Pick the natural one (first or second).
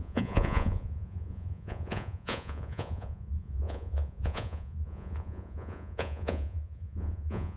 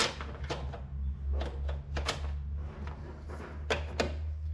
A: second